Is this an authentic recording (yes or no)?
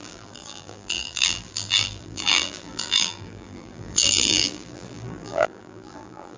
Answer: no